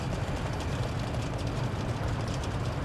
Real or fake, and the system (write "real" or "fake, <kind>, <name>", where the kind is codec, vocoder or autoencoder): real